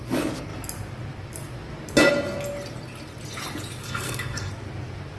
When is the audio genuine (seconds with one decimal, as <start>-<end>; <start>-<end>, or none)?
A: 0.0-3.8; 4.5-5.2